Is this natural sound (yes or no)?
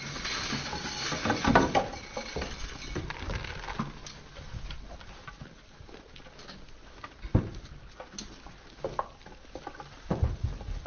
yes